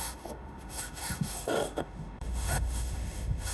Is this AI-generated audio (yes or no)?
yes